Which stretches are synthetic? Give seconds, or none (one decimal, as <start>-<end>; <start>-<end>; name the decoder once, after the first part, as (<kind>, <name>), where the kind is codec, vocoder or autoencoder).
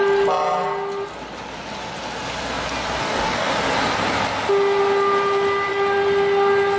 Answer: 3.0-3.5 (codec, DAC)